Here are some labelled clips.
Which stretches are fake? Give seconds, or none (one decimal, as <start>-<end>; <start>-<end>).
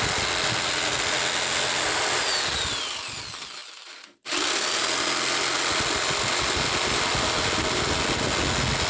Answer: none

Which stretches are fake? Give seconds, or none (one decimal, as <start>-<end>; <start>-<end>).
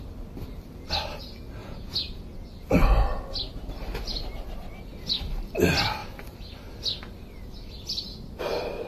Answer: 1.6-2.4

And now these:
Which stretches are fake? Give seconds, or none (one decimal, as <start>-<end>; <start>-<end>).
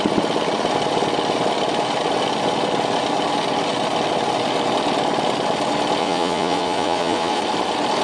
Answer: 6.0-7.4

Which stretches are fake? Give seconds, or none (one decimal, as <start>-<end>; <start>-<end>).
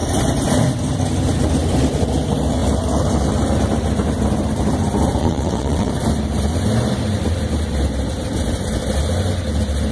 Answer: 5.2-5.9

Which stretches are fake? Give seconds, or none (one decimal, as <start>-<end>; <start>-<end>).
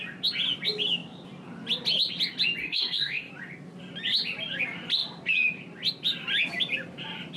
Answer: 2.6-3.3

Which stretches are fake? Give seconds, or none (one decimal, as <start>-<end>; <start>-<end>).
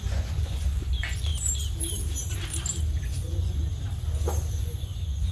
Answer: 0.0-1.3; 3.0-3.6; 4.5-5.3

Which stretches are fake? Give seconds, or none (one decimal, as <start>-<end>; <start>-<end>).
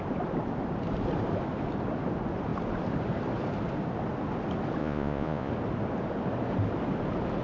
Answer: 4.8-5.5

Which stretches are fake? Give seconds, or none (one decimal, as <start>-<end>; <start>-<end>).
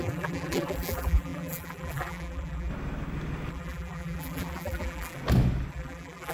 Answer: 0.0-2.7; 3.5-5.2; 5.7-6.3